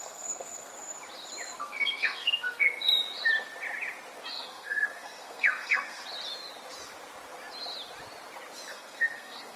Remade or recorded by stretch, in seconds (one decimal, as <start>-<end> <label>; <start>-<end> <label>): 0.0-0.7 remade; 0.7-1.6 recorded; 1.6-2.9 remade; 2.9-4.3 recorded; 4.3-6.0 remade; 6.0-8.7 recorded; 8.7-9.6 remade